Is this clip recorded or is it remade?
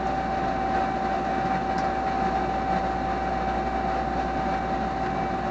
recorded